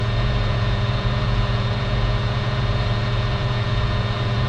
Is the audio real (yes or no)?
no